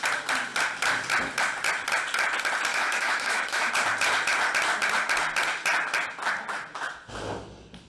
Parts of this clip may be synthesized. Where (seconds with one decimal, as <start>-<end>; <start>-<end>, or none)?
2.7-3.7